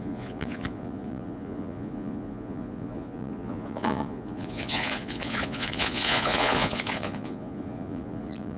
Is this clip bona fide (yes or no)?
no